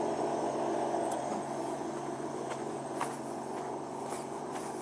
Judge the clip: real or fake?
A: fake